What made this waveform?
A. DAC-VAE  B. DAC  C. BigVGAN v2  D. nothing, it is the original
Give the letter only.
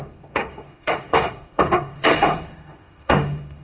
A